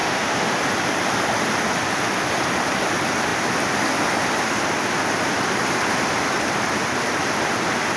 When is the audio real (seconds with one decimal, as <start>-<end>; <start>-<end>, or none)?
0.5-8.0